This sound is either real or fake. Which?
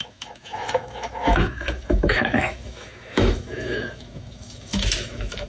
fake